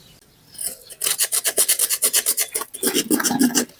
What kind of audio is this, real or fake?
real